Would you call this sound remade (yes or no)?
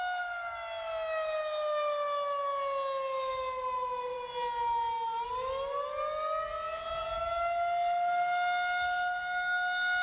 no